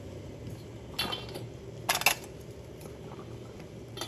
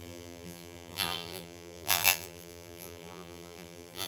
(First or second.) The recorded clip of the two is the first